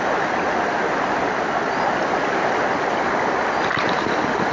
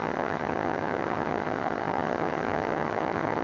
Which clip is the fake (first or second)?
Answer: second